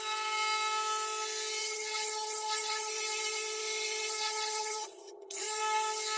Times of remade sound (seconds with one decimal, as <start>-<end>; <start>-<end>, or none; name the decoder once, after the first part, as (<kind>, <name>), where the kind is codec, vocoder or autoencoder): 1.6-2.9 (vocoder, HiFi-GAN); 4.2-5.6